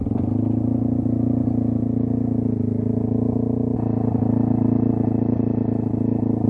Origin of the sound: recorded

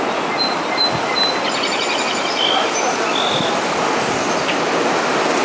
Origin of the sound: recorded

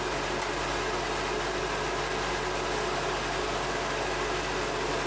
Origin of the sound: recorded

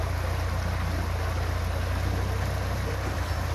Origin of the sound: recorded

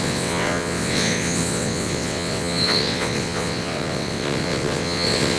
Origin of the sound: remade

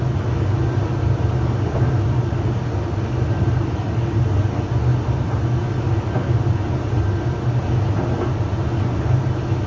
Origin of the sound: recorded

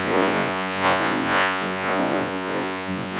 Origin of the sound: remade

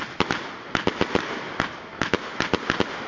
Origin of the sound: recorded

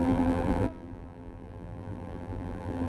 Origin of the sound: remade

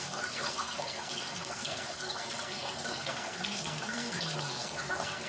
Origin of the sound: remade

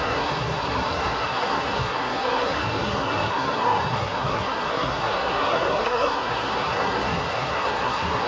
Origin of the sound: remade